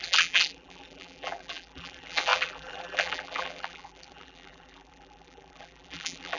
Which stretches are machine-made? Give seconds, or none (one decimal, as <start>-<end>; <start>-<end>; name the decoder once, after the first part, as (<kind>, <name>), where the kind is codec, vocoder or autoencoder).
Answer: 0.0-6.4 (vocoder, BigVGAN v2)